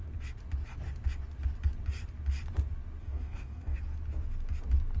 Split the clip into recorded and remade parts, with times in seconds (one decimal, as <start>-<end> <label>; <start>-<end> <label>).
0.0-3.0 recorded; 3.0-3.8 remade; 3.8-5.0 recorded